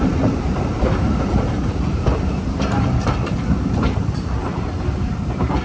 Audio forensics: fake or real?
fake